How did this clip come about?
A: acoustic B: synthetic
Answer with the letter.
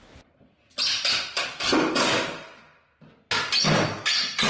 A